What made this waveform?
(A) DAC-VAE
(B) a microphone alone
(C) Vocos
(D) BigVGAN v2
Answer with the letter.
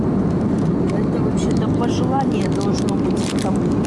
B